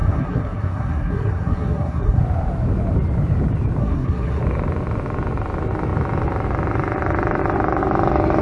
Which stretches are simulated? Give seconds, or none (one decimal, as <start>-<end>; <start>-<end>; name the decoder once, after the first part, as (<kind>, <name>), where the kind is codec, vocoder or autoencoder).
0.0-2.2 (codec, SNAC); 3.8-4.4